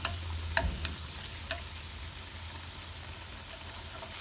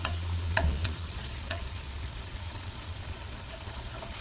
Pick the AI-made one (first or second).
second